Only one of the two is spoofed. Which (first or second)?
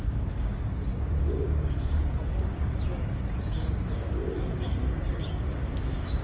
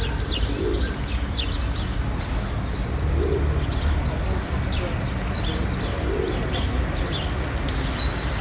first